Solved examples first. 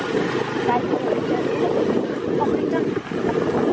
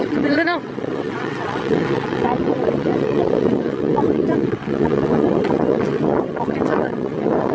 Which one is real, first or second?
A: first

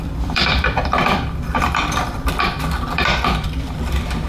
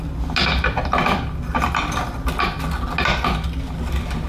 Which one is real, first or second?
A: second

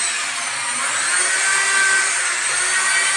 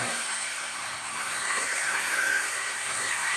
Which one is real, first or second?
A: first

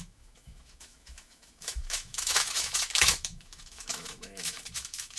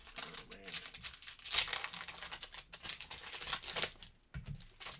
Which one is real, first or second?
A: second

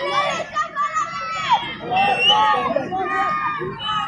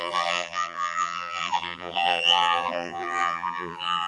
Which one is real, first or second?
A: first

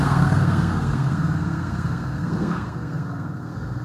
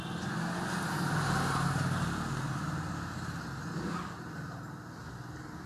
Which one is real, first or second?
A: second